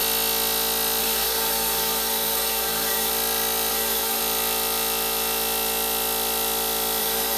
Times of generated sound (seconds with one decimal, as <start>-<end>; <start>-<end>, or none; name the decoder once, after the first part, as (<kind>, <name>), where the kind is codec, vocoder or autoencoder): 1.0-3.1 (codec, SNAC); 3.7-4.2; 7.0-7.4